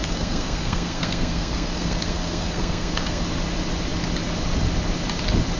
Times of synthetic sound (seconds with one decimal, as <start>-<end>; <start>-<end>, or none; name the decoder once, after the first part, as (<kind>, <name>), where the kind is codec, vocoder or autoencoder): 0.0-3.2 (codec, SNAC)